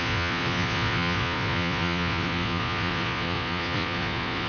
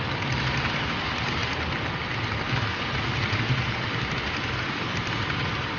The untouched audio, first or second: second